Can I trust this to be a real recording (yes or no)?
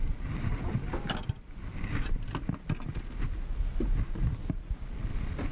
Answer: yes